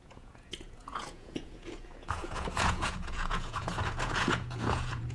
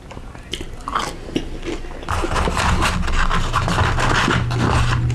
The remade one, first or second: first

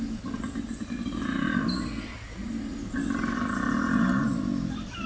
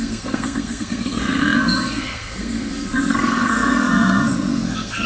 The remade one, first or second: second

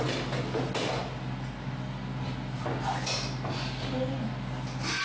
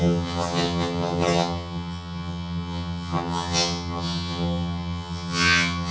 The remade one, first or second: second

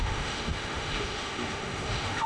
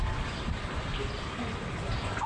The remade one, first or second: first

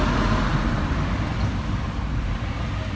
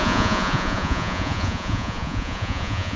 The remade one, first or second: second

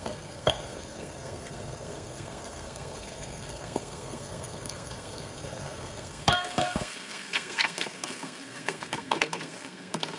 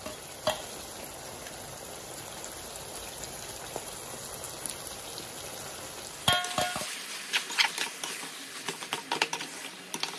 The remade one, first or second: first